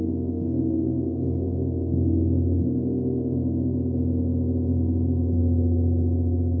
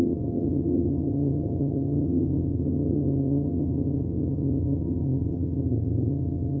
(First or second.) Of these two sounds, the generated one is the second